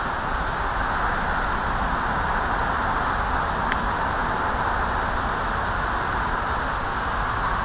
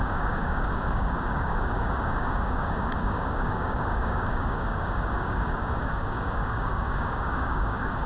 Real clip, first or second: first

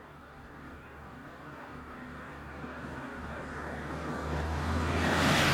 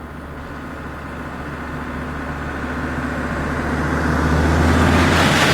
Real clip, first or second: second